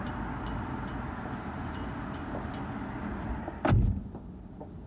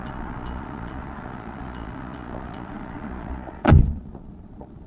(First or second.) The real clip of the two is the first